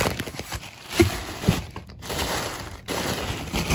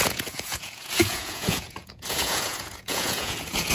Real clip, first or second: first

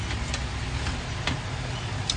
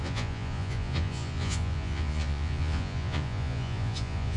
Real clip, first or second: first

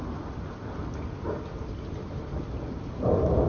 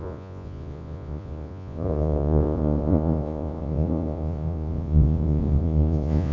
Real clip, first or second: first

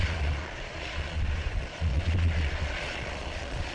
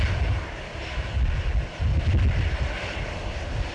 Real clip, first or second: second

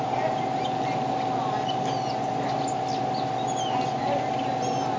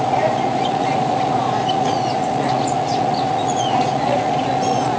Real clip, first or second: first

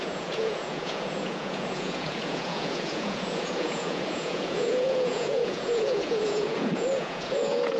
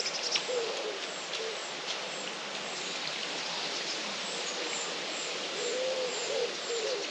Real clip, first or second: second